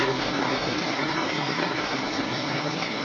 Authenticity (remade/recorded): remade